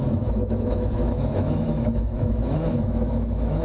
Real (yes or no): no